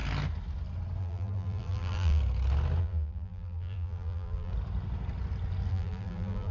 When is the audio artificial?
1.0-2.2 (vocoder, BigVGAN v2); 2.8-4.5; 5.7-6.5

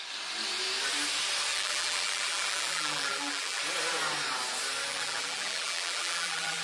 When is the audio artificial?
1.5-3.6 (vocoder, BigVGAN v2); 4.9-6.6

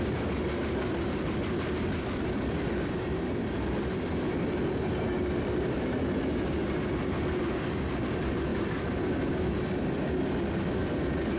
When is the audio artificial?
none

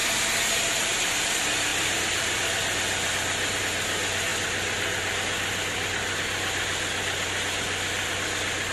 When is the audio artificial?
0.0-1.1 (vocoder, BigVGAN v2); 1.7-3.6

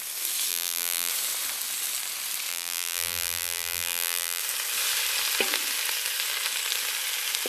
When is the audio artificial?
0.5-1.1 (vocoder, BigVGAN v2); 2.5-4.4

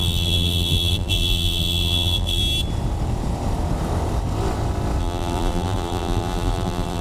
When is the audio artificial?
0.0-2.4 (vocoder, BigVGAN v2); 5.0-7.0